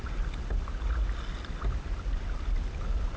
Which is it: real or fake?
real